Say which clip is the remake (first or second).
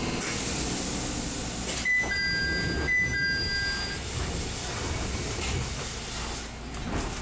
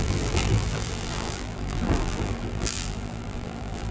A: second